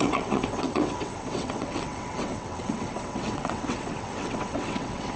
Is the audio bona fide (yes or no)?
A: no